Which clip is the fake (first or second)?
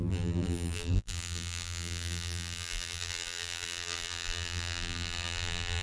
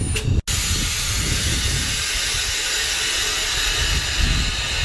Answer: first